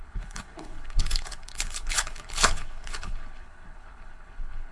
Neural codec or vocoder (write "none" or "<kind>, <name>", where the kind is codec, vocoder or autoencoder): codec, HILCodec